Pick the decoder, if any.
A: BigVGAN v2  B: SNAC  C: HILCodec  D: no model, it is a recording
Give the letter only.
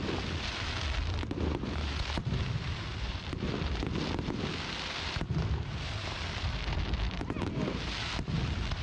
A